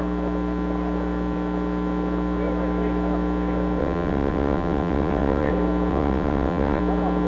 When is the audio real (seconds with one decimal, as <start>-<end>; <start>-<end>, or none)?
0.0-3.8; 5.5-5.9; 6.8-7.3